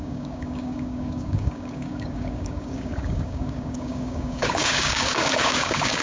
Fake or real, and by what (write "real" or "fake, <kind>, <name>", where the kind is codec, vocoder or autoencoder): fake, codec, DAC